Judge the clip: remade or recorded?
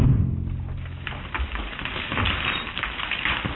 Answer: recorded